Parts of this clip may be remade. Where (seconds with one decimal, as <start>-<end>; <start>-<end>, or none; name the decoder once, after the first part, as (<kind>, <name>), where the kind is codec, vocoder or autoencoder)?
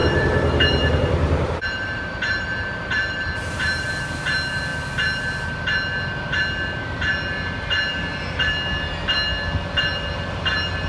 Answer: 0.0-4.0 (vocoder, BigVGAN v2)